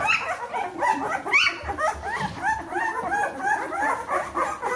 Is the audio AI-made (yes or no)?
no